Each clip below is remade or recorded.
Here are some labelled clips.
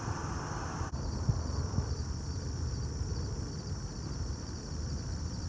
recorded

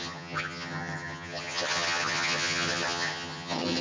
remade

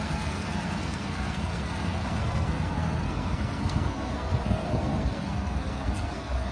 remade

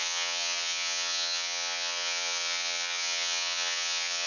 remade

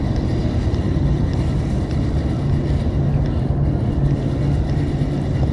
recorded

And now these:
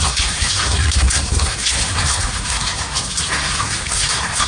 remade